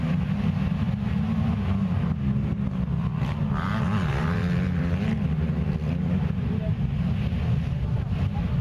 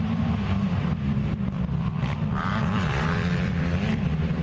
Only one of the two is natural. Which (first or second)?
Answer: first